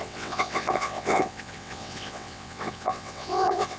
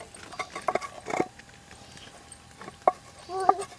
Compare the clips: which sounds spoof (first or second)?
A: first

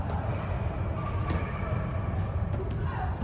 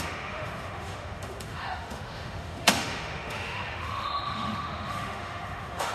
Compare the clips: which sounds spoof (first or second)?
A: second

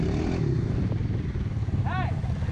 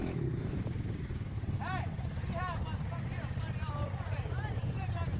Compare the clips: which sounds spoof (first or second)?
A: second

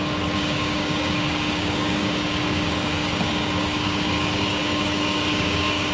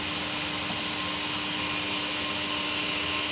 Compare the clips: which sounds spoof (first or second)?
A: first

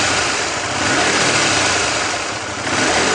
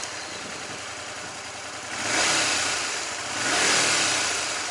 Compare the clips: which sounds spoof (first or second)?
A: first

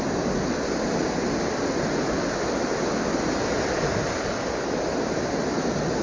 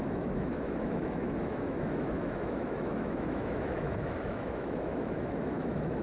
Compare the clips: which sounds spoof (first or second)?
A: second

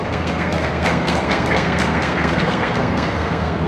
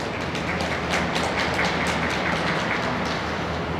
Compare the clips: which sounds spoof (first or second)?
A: first